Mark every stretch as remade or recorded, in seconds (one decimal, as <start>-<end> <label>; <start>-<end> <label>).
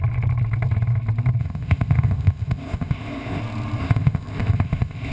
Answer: 0.0-1.4 recorded; 1.4-3.4 remade; 3.4-3.8 recorded; 3.8-5.1 remade